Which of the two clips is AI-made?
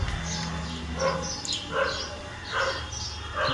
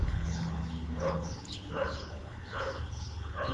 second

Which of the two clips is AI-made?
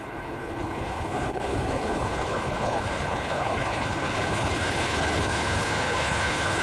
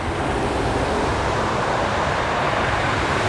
first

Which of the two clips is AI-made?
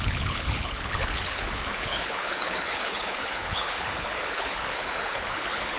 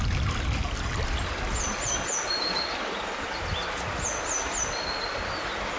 first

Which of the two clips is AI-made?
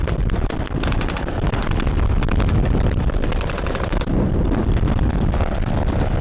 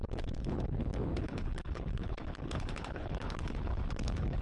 second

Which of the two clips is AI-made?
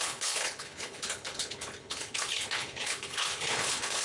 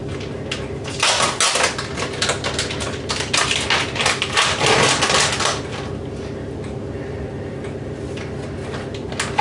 first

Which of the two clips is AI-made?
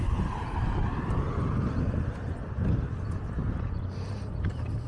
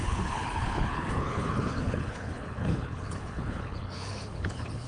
second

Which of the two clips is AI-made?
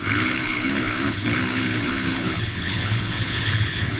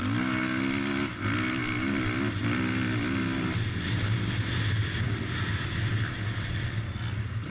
first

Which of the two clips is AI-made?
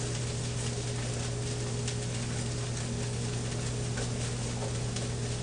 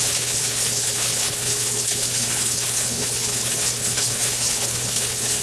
second